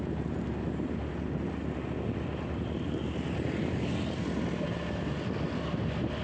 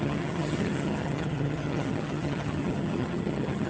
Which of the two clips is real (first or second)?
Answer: first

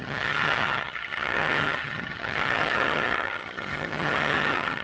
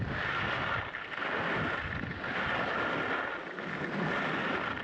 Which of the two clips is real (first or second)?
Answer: second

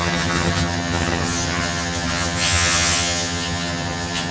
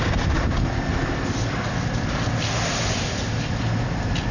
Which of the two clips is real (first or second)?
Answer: second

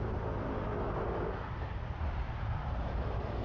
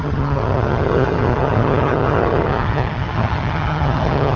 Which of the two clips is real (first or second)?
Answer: first